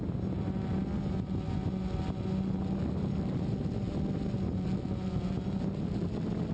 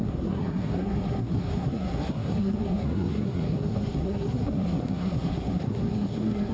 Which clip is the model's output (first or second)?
second